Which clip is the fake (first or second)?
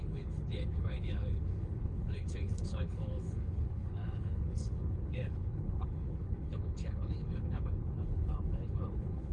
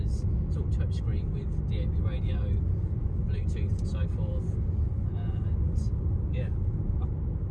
first